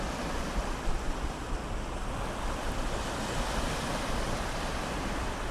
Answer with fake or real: real